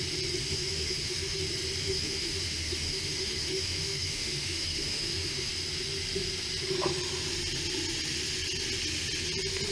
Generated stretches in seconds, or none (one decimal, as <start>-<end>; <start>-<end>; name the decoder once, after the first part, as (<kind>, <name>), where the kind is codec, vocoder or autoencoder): 0.4-1.4 (autoencoder, DAC-VAE); 1.8-5.5